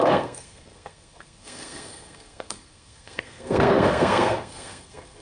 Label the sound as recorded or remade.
remade